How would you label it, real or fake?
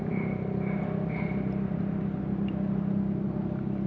real